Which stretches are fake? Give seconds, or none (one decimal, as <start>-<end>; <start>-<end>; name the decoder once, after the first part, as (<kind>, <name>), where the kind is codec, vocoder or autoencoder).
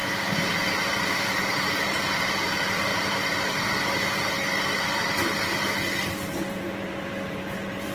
0.7-7.9 (vocoder, BigVGAN v2)